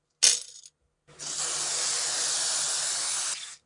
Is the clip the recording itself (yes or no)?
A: yes